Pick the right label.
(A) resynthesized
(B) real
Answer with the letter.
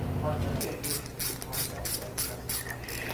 B